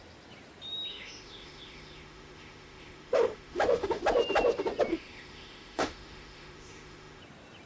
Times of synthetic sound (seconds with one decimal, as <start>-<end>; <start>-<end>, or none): 0.9-4.0; 4.9-7.2